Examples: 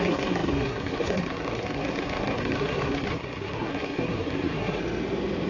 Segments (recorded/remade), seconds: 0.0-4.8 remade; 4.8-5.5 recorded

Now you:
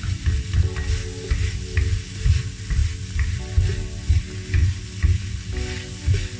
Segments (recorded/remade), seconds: 0.0-6.4 recorded

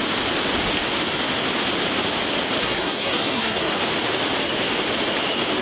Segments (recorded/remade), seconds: 0.0-2.6 recorded; 2.6-3.7 remade; 3.7-5.6 recorded

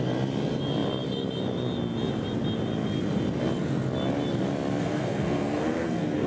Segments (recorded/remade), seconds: 0.0-4.8 recorded; 4.8-6.3 remade

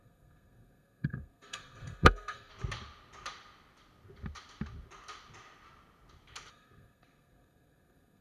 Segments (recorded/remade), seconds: 0.0-2.5 remade; 2.5-6.5 recorded; 6.5-8.2 remade

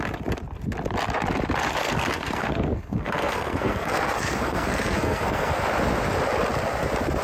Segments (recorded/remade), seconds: 0.0-1.8 recorded; 1.8-5.6 remade; 5.6-7.2 recorded

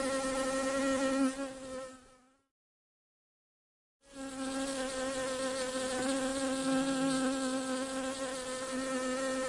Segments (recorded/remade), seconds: 0.0-9.5 recorded

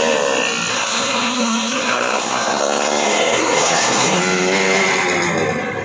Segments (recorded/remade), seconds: 0.0-0.7 recorded; 0.7-4.2 remade; 4.2-5.8 recorded